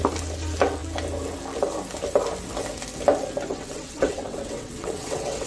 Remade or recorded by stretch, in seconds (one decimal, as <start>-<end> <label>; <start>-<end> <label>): 0.0-3.5 recorded; 3.5-5.5 remade